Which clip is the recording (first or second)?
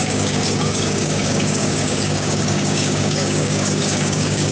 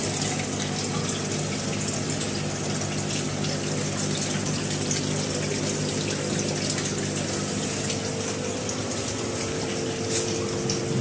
second